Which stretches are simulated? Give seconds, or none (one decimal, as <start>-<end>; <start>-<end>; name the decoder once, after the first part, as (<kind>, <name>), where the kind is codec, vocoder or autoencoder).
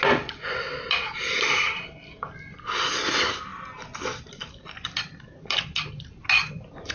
none